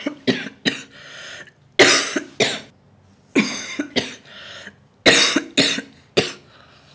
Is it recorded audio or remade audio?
recorded